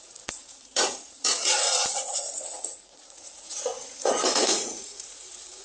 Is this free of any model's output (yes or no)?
no